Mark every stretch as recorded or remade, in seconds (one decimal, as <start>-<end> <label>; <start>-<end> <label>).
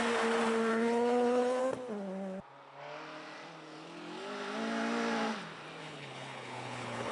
0.0-0.7 recorded; 0.7-1.6 remade; 1.6-5.8 recorded; 5.8-7.1 remade